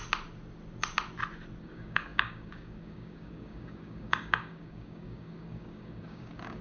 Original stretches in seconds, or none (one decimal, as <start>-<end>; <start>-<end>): 0.0-1.6